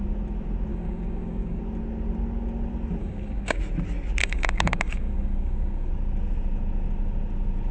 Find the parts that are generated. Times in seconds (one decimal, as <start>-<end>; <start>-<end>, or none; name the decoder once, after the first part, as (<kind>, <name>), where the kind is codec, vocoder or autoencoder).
0.7-1.6 (codec, DAC); 3.0-3.6; 4.2-5.9

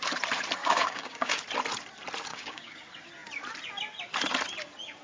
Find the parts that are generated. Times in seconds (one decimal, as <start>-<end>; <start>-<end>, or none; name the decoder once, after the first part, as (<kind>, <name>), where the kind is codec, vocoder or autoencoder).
0.6-1.4 (codec, DAC); 2.3-2.8

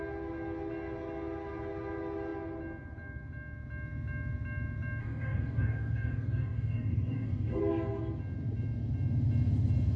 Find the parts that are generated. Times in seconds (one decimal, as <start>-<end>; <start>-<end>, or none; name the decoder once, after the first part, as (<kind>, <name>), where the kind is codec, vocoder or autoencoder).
5.0-7.6 (codec, DAC)

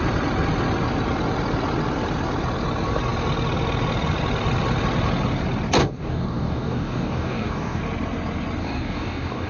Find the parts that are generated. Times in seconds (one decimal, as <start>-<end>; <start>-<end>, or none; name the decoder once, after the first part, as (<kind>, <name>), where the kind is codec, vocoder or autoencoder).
5.8-7.8 (codec, DAC); 8.6-9.5

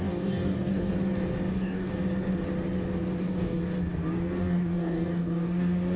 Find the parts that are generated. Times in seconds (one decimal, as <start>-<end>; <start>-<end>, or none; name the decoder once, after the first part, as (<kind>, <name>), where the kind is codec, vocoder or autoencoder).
0.0-0.9 (codec, DAC); 1.5-1.9; 3.2-3.6; 4.4-6.0

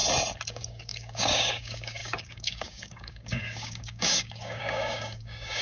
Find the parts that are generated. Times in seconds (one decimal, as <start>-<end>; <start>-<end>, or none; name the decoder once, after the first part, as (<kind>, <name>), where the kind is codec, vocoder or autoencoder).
0.5-5.6 (codec, DAC)

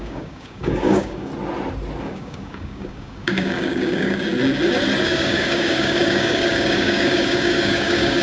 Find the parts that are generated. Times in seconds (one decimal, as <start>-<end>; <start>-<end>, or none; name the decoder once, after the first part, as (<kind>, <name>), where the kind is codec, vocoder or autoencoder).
0.0-1.3 (codec, DAC); 2.0-4.3; 5.0-8.2

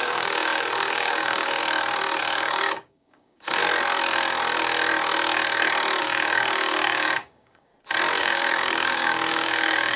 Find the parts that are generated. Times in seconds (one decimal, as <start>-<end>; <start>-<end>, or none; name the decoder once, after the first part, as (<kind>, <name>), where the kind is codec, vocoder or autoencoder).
0.0-1.6 (codec, DAC); 2.2-3.6; 6.0-7.7; 8.2-10.0